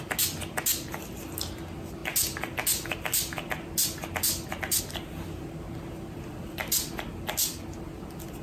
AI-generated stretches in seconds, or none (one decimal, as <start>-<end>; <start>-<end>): none